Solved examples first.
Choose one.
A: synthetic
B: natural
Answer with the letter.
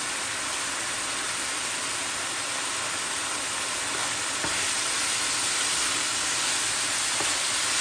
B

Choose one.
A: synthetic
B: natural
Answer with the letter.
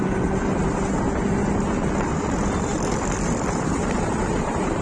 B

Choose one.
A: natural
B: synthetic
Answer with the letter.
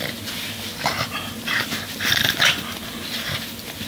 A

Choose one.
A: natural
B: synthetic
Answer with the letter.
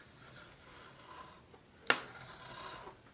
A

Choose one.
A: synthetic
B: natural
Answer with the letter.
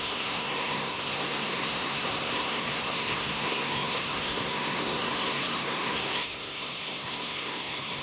A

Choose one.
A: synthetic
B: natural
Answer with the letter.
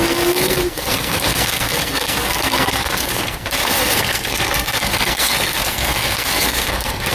A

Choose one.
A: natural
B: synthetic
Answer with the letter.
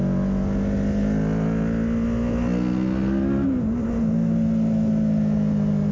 A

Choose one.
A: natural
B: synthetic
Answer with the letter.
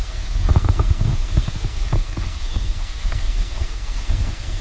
B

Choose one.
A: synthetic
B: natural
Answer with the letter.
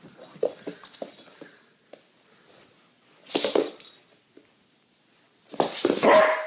B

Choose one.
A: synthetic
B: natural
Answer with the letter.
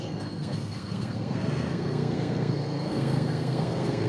A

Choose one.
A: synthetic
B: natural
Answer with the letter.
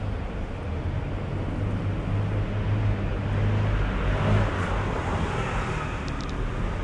B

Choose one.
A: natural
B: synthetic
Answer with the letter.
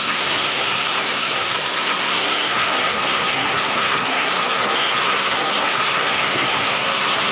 B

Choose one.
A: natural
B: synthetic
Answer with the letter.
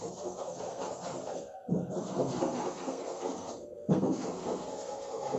B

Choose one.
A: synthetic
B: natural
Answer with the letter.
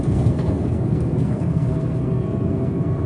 A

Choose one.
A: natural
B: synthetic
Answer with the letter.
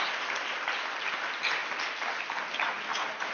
A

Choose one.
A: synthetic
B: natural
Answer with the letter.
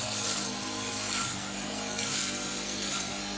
A